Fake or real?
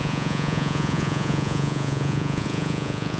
fake